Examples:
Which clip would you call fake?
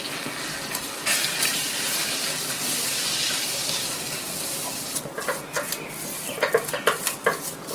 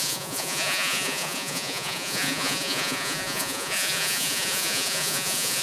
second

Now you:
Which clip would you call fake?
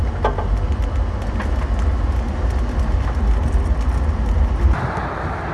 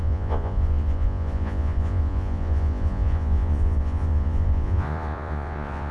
second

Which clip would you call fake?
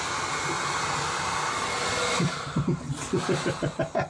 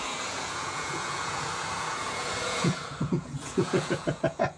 second